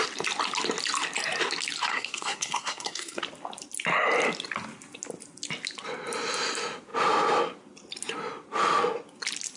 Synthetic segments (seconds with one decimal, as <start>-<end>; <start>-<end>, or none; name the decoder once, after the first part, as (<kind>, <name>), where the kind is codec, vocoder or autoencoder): 1.9-3.2 (codec, SNAC)